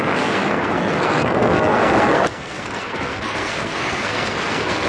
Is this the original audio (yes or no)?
no